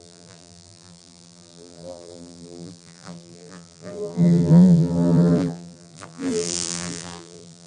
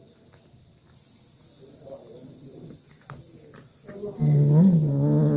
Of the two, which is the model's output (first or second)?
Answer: first